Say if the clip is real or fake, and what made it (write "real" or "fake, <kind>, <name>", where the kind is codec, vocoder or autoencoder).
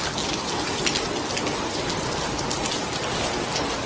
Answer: real